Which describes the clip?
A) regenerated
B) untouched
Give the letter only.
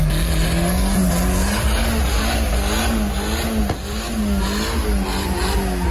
B